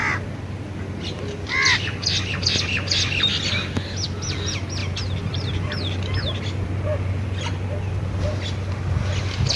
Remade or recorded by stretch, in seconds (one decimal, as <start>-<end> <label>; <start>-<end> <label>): 0.0-9.6 recorded